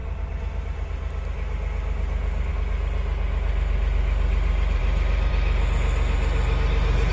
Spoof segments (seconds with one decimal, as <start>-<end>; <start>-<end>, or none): none